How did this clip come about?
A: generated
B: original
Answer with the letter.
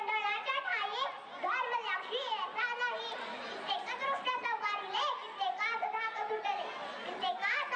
B